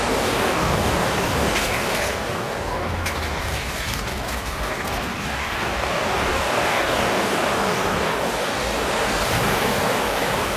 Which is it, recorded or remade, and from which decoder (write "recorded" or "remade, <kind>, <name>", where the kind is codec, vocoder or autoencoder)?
remade, codec, DAC